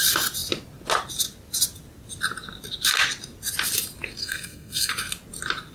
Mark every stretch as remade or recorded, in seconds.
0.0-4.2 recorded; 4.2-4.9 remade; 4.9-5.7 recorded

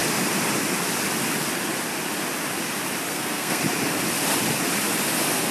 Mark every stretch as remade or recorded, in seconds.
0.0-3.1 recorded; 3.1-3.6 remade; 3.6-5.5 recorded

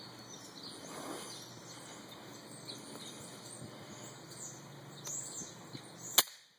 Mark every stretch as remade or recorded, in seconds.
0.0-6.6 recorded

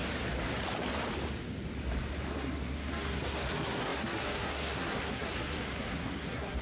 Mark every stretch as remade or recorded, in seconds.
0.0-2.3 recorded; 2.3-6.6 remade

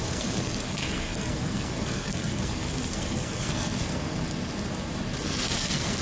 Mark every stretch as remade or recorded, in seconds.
0.0-4.2 remade; 4.2-5.2 recorded; 5.2-6.0 remade

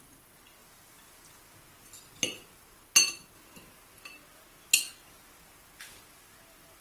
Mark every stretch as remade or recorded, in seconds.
0.0-6.8 recorded